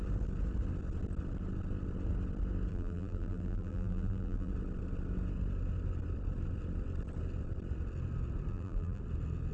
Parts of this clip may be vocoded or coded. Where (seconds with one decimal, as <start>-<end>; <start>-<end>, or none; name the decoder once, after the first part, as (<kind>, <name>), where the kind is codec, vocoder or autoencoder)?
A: 2.7-4.5 (vocoder, BigVGAN v2); 8.5-9.0

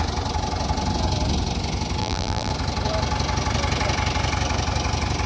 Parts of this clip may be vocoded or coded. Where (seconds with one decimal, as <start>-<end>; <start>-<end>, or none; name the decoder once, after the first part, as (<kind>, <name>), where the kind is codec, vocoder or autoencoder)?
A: 2.0-2.5 (vocoder, BigVGAN v2)

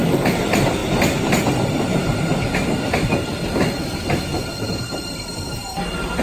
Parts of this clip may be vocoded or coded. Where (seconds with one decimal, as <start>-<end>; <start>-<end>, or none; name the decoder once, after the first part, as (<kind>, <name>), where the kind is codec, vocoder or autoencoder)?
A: 0.0-0.8 (vocoder, BigVGAN v2); 4.5-5.6

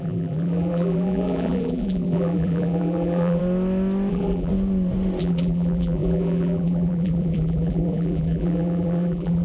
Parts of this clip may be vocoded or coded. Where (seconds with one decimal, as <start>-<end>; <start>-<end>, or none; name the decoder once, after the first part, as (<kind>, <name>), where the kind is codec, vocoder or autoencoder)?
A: 0.0-3.4 (vocoder, BigVGAN v2); 4.1-4.5; 5.2-9.4

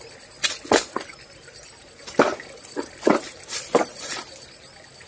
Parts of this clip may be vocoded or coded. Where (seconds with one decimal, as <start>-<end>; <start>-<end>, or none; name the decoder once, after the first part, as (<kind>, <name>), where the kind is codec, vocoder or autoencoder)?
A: 1.1-4.2 (vocoder, BigVGAN v2)

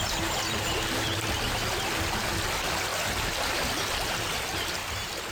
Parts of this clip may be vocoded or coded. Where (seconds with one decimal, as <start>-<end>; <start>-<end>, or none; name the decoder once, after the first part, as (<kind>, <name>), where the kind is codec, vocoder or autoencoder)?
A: none

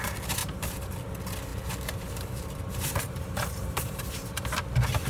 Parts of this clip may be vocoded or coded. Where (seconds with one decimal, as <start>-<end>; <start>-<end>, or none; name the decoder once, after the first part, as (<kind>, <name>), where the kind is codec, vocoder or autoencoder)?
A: 0.4-0.9 (vocoder, BigVGAN v2); 1.5-4.6

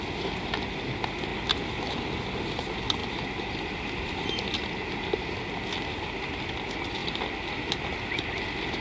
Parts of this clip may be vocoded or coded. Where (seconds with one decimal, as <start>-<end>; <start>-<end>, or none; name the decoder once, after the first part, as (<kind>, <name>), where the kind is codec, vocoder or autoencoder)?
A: none